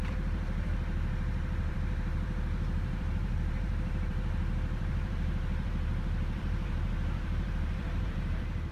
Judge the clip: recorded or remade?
remade